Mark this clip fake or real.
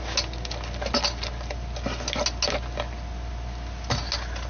real